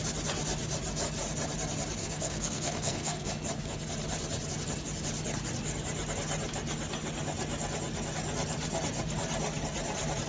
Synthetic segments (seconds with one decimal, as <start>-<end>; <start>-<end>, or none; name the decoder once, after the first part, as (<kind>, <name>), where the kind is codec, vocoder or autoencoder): 2.0-3.3 (codec, SNAC)